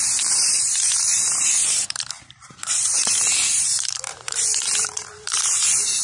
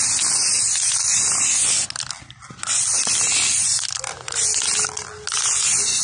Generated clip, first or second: first